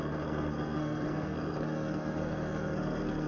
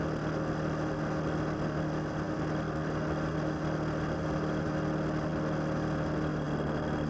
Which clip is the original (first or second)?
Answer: second